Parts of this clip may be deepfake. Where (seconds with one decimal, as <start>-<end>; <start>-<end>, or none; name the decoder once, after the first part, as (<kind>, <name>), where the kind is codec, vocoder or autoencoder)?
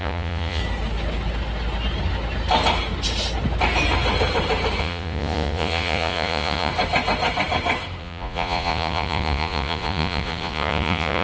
0.0-0.6 (vocoder, Vocos); 4.8-6.7; 8.0-11.2